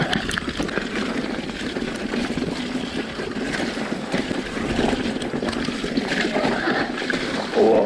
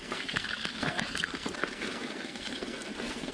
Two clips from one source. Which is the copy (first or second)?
second